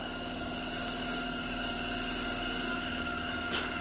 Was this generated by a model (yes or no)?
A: yes